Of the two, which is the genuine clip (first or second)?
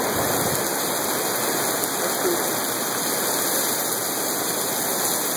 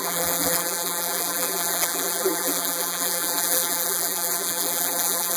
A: first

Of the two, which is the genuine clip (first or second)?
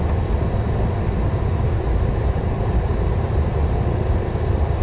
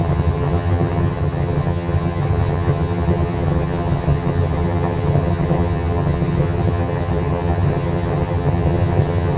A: first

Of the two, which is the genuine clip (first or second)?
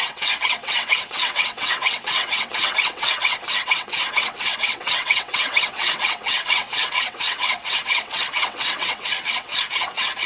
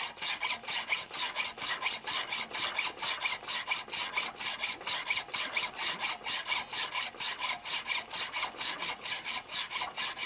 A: second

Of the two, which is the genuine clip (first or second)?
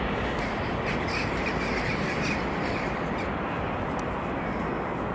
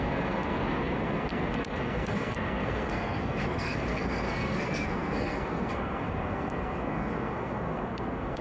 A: first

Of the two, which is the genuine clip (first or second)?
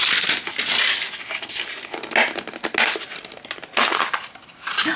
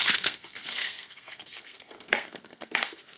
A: first